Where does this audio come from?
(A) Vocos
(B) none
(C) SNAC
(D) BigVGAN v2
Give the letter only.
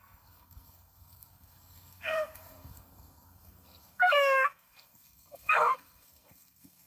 C